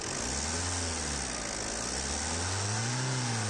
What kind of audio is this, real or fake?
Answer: real